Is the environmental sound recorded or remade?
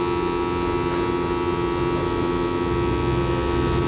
recorded